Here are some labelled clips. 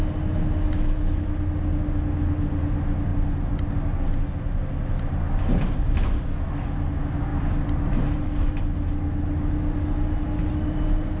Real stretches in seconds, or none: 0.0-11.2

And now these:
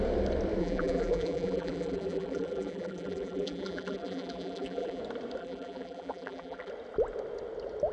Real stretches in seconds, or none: 0.0-0.6; 5.0-5.4; 6.7-7.9

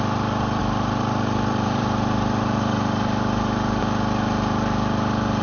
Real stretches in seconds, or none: 0.0-0.6; 3.8-5.4